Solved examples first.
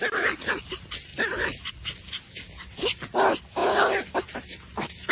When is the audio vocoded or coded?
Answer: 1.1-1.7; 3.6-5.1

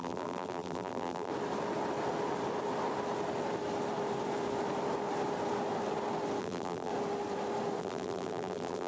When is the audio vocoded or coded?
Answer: 0.0-1.3; 6.4-6.9; 7.8-8.9